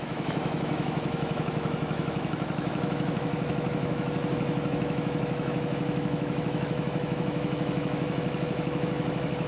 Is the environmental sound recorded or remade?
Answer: remade